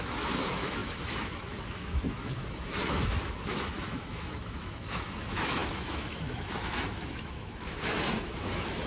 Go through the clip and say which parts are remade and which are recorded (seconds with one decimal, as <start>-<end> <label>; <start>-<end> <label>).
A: 0.0-8.9 remade